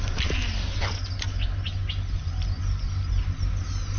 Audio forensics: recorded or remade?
recorded